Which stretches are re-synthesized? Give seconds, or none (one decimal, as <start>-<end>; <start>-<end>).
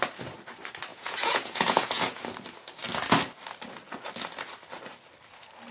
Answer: 0.9-2.2